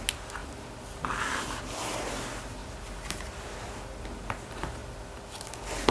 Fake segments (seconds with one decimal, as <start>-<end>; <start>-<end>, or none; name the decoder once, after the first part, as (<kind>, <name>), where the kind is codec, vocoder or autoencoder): none